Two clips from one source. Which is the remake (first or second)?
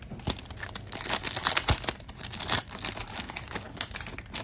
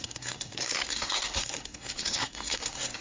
second